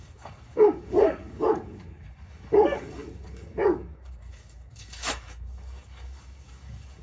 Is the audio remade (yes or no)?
yes